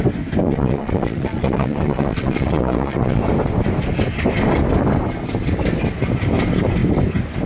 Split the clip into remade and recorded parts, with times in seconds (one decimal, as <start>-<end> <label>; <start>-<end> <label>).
0.0-0.4 recorded; 0.4-3.2 remade; 3.2-7.5 recorded